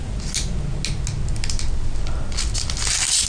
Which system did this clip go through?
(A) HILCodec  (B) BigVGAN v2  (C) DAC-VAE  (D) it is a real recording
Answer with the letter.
D